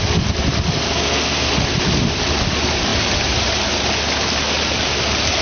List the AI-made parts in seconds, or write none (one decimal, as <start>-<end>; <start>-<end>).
0.9-1.5

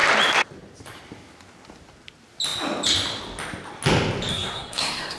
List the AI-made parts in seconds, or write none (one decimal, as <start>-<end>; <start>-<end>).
4.3-5.2